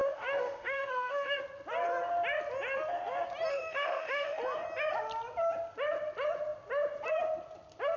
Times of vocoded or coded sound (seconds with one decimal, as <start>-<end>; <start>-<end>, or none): 0.0-1.4; 3.5-4.4